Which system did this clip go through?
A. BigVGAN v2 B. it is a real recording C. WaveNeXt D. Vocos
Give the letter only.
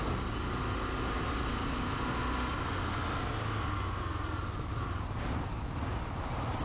B